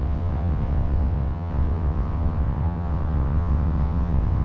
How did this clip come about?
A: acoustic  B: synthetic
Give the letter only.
B